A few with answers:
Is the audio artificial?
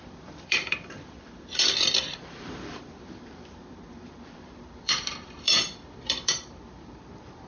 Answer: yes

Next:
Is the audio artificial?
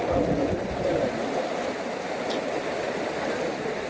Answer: yes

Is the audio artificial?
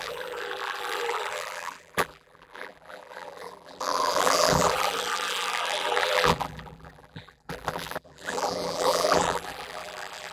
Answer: yes